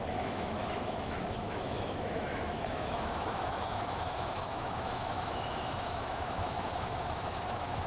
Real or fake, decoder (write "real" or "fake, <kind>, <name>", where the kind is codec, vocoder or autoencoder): fake, autoencoder, DAC-VAE